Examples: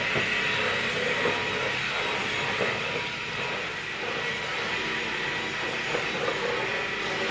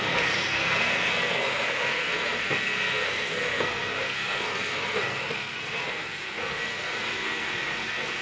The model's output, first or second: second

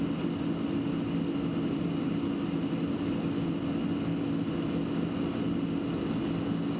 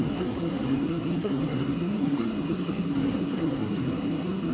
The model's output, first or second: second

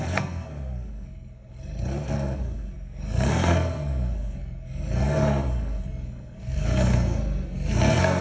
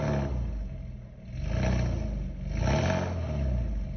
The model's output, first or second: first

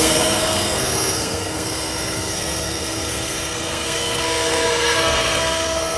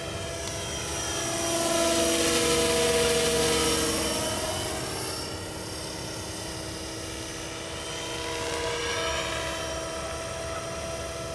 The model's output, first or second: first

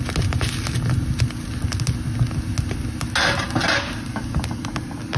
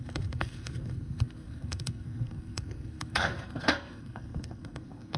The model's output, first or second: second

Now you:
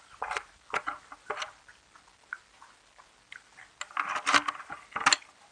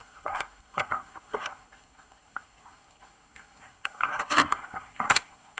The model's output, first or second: second